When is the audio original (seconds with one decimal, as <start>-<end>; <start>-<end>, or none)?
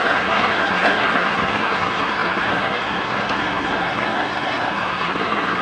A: none